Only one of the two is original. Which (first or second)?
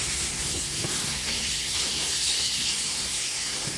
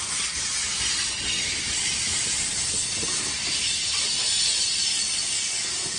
second